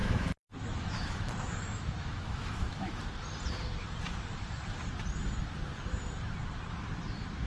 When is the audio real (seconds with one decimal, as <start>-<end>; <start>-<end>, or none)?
3.0-7.5